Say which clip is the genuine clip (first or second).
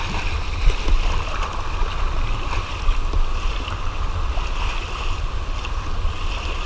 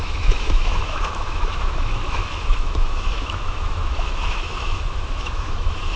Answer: first